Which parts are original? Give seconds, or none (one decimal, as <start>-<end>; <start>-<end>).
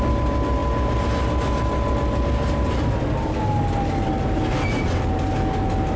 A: 0.0-6.0